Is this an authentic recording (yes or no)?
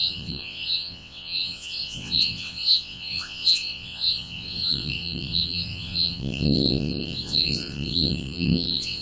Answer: no